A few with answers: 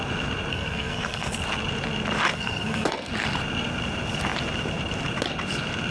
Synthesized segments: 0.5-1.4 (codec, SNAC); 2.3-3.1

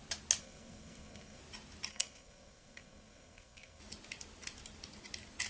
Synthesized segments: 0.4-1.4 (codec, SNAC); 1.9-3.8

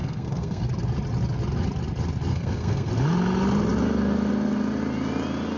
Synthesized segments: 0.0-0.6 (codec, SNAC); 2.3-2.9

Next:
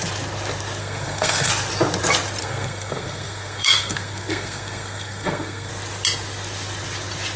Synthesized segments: 0.8-1.5 (codec, SNAC); 2.4-5.7

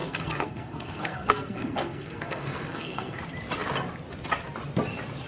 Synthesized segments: 0.0-3.2 (codec, SNAC)